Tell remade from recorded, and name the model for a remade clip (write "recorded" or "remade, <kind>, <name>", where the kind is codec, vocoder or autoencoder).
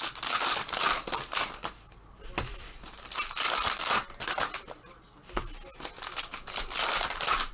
recorded